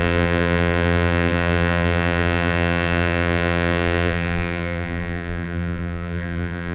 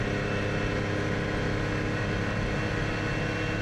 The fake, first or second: first